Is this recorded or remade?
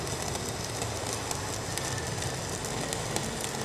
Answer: recorded